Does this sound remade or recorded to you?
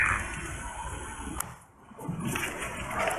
recorded